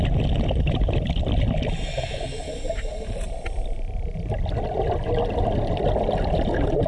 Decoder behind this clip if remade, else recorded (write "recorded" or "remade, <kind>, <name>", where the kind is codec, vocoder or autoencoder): recorded